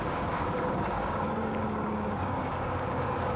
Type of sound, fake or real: fake